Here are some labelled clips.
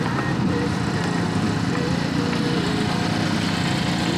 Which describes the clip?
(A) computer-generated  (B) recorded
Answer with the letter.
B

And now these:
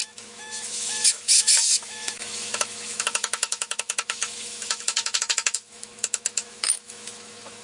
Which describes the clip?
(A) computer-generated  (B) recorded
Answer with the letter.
A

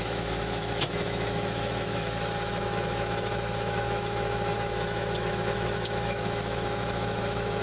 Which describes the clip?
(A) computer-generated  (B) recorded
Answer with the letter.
A